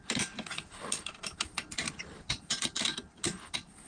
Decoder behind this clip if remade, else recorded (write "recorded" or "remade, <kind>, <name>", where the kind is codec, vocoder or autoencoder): recorded